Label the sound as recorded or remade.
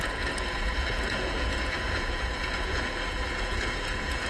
remade